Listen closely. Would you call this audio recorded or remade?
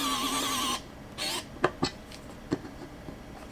recorded